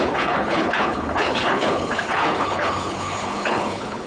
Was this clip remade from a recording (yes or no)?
yes